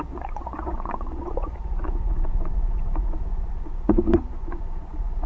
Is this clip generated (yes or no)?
yes